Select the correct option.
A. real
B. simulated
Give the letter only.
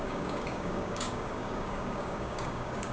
B